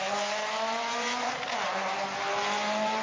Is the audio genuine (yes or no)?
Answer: no